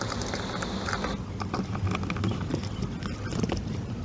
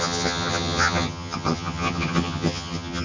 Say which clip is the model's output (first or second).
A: second